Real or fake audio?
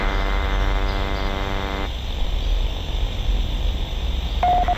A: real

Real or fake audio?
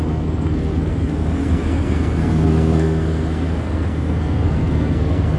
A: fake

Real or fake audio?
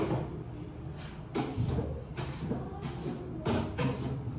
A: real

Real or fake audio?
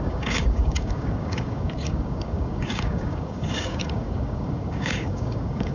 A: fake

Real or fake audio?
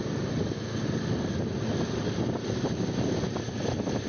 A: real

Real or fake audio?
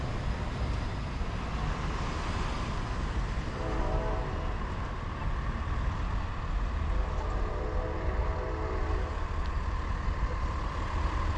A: real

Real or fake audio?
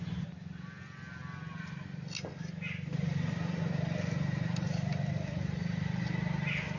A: real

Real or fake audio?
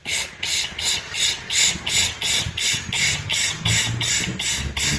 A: real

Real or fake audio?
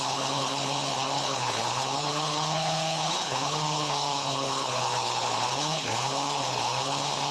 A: fake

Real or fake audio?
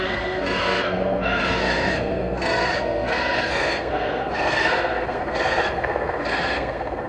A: fake